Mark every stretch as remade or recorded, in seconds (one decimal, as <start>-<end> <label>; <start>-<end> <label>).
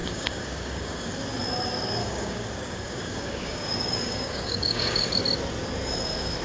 0.0-1.1 remade; 1.1-2.0 recorded; 2.0-5.2 remade; 5.2-6.4 recorded